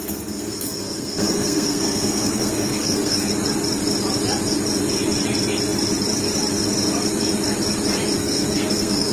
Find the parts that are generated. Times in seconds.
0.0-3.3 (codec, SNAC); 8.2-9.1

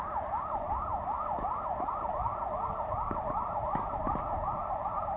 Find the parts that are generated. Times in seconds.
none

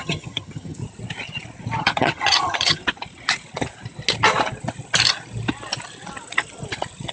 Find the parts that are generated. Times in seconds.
0.0-0.8 (vocoder, HiFi-GAN); 1.8-2.8